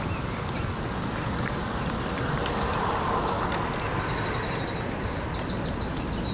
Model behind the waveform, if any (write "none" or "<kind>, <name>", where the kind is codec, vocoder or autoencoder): none